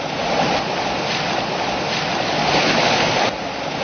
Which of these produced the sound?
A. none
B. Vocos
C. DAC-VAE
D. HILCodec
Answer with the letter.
A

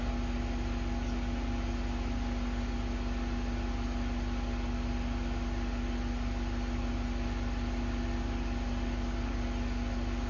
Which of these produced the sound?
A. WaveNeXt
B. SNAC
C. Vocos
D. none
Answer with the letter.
D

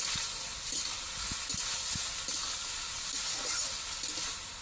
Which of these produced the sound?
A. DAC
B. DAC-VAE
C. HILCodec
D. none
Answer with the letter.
D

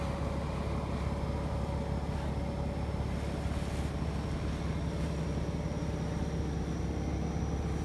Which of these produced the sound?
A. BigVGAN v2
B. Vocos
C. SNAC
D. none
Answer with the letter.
D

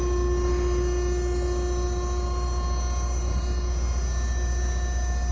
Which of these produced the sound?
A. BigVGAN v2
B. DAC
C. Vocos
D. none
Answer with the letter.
D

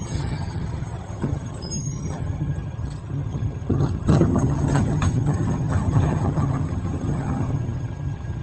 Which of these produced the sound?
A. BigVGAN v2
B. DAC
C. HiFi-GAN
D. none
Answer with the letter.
C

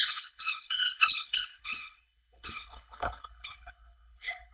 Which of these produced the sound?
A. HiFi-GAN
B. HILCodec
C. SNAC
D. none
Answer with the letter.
B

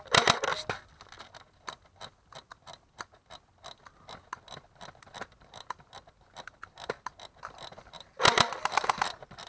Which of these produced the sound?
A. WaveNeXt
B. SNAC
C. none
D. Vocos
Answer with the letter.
C